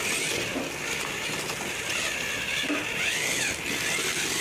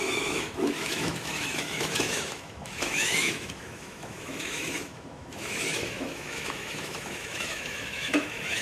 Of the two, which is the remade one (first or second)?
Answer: second